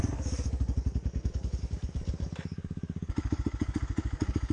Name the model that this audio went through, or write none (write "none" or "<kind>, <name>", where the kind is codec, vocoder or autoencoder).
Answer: codec, DAC